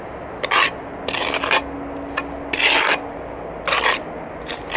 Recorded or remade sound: recorded